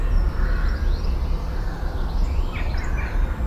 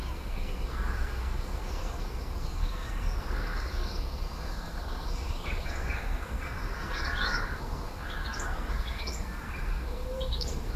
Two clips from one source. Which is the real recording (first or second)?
first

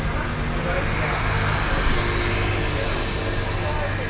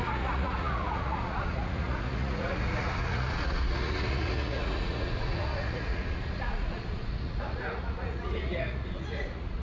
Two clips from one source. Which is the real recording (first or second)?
first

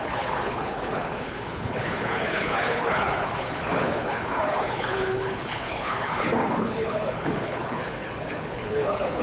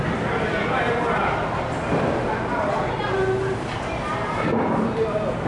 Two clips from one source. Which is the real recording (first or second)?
second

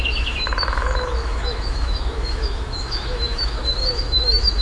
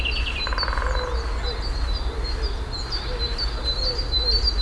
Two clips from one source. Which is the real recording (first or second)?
second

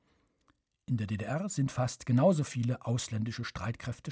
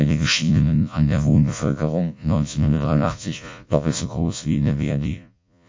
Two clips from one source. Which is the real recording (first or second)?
first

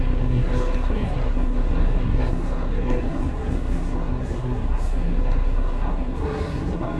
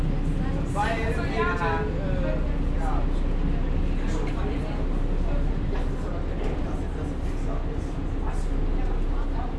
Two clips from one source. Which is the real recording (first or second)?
second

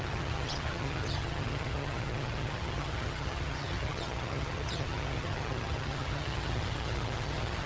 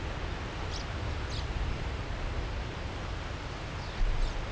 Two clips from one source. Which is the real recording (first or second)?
second